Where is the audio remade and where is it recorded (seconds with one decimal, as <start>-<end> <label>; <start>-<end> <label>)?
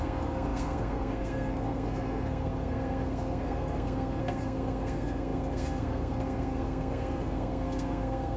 0.0-8.4 remade